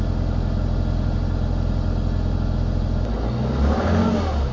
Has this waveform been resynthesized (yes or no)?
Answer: no